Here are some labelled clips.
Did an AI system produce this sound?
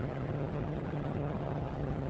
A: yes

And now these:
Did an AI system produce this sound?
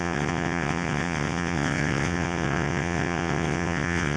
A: yes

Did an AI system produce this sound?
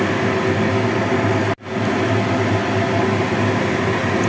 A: no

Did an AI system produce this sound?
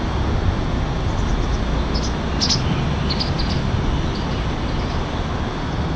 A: no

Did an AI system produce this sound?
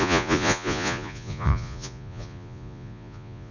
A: yes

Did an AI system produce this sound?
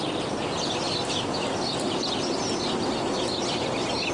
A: no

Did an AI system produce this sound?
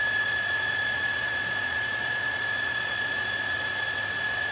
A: yes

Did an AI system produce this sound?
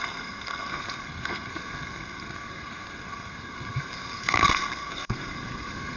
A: yes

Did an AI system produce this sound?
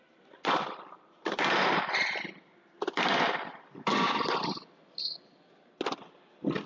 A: no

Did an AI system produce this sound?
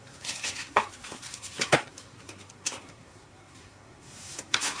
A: yes